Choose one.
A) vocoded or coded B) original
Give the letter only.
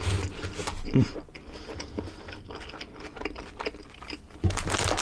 B